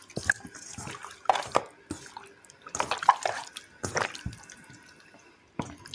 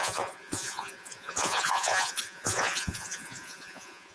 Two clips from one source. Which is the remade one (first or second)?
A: second